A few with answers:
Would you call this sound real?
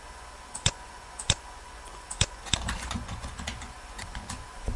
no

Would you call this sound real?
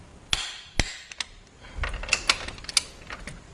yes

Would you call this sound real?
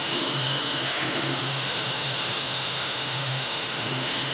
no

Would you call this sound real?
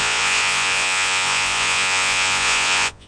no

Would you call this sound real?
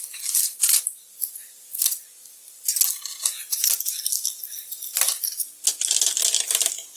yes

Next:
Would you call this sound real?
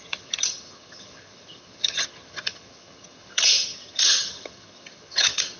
no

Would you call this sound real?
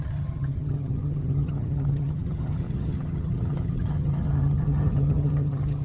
no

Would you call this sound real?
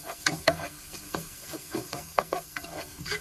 no